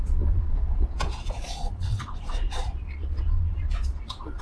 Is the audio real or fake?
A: fake